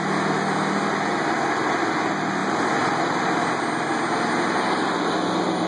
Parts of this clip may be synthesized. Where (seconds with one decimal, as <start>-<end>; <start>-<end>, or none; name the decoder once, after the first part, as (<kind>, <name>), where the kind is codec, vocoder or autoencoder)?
2.4-3.6 (vocoder, BigVGAN v2)